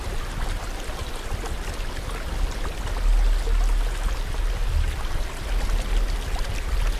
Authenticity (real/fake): real